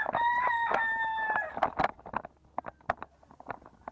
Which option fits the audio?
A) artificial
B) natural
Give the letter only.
B